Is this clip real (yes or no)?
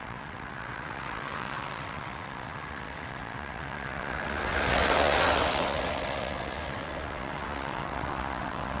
no